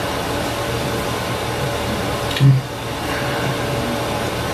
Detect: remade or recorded recorded